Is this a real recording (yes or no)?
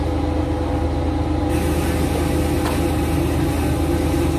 yes